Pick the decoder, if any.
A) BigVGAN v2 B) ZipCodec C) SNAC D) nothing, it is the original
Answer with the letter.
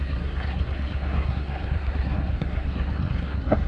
C